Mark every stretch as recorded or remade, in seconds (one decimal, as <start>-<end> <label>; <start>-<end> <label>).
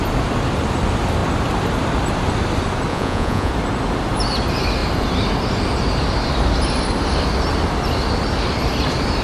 0.0-2.9 recorded; 2.9-3.5 remade; 3.5-9.2 recorded